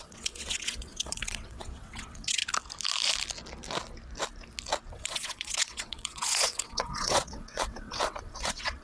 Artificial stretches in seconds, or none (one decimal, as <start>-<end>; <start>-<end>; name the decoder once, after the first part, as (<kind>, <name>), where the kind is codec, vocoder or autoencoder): 0.0-2.4 (vocoder, WaveNeXt); 4.9-8.8